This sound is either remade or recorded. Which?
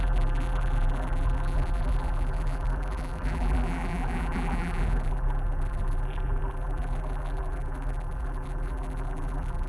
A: remade